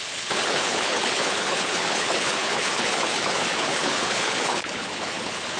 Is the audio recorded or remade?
remade